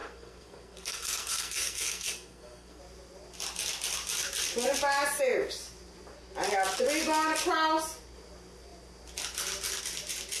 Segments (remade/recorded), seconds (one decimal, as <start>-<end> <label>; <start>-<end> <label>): 0.0-2.8 remade; 2.8-10.4 recorded